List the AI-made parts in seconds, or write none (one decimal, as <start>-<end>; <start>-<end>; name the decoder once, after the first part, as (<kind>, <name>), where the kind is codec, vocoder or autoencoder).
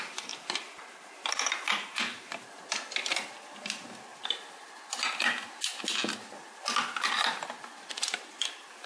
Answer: none